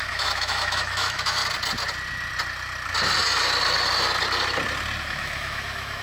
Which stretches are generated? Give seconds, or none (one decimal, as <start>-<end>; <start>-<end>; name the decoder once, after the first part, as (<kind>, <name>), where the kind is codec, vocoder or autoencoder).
0.0-1.4 (autoencoder, DAC-VAE); 5.0-6.0